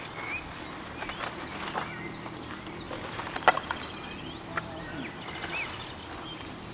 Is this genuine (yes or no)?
yes